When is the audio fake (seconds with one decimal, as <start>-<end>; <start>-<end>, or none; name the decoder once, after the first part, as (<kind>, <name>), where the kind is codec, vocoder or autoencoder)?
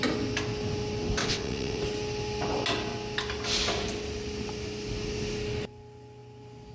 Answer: 1.2-1.8 (vocoder, WaveNeXt)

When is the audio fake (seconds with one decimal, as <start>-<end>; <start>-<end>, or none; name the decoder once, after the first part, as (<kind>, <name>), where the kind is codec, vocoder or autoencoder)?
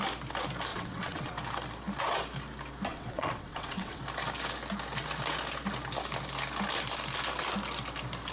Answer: 0.7-1.3 (vocoder, WaveNeXt); 2.9-4.0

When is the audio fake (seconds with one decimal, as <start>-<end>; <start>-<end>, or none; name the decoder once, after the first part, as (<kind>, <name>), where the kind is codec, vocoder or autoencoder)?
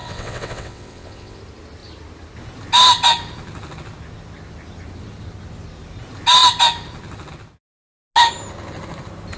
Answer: 0.0-1.4 (vocoder, WaveNeXt)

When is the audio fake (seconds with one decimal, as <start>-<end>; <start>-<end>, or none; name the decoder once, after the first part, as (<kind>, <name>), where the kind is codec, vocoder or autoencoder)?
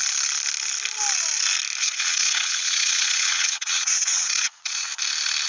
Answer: 1.8-4.9 (vocoder, WaveNeXt)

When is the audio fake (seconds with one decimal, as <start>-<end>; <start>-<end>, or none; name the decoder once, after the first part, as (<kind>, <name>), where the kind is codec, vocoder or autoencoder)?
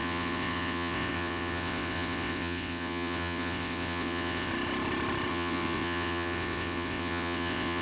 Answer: 0.0-4.5 (vocoder, WaveNeXt); 5.3-7.8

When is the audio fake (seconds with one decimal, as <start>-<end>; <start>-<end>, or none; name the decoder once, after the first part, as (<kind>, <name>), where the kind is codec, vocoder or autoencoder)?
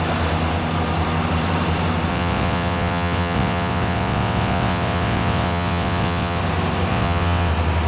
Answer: 2.1-6.4 (vocoder, WaveNeXt); 6.9-7.5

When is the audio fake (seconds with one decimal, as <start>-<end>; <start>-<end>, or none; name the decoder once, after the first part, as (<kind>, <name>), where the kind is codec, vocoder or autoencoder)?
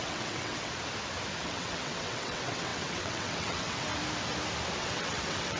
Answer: 0.0-0.7 (vocoder, WaveNeXt); 1.4-3.9; 4.8-5.6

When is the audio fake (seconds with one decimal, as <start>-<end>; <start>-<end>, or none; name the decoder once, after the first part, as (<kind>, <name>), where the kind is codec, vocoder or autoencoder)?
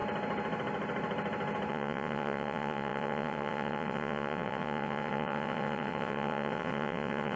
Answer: 1.7-7.4 (vocoder, WaveNeXt)